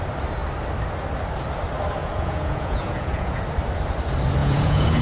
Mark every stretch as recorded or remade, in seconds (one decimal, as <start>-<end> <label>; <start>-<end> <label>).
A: 0.0-2.0 recorded; 2.0-3.4 remade; 3.4-4.4 recorded; 4.4-5.0 remade